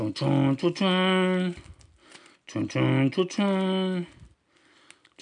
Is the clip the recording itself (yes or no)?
yes